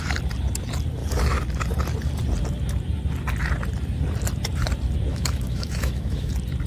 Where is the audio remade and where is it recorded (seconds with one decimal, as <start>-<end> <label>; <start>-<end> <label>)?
0.0-5.1 recorded; 5.1-6.3 remade; 6.3-6.7 recorded